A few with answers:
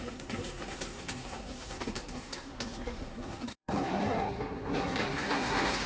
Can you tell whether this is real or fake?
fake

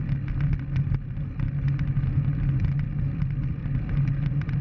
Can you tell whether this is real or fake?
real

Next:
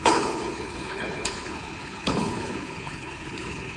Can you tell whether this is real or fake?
fake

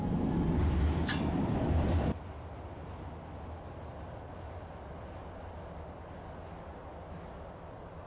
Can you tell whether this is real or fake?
real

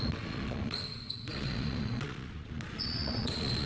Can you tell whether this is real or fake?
fake